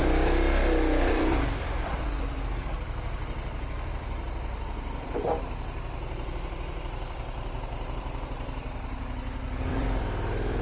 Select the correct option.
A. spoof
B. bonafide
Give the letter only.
A